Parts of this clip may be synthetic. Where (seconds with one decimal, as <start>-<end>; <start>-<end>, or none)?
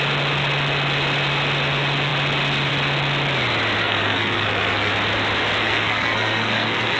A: 3.8-4.9; 5.6-7.0